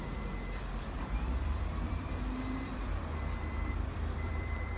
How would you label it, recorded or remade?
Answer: remade